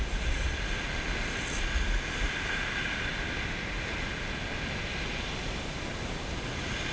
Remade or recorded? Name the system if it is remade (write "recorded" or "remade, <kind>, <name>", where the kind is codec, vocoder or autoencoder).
recorded